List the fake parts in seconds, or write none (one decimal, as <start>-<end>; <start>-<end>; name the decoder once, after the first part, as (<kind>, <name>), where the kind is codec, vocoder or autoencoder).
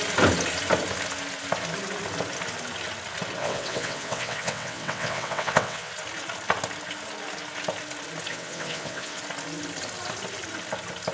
3.4-5.9 (vocoder, WaveNeXt); 8.3-9.2